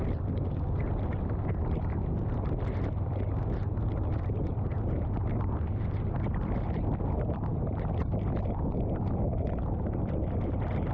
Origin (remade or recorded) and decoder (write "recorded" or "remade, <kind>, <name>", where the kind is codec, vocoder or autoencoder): recorded